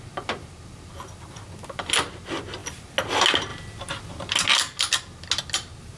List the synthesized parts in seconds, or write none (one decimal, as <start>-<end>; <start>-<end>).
none